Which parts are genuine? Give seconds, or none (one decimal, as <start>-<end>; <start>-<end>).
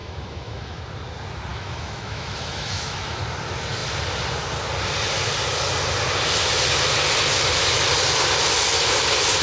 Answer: 0.8-1.5; 3.2-9.4